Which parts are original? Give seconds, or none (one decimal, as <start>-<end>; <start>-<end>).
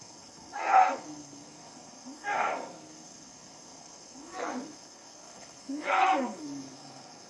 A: none